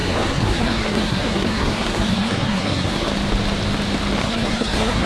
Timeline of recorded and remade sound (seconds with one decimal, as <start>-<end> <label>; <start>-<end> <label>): 0.0-3.1 remade; 3.1-4.2 recorded; 4.2-5.1 remade